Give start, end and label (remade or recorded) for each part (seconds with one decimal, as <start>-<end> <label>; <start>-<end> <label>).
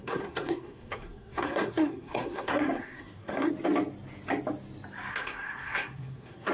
0.0-3.5 remade; 3.5-5.1 recorded; 5.1-6.5 remade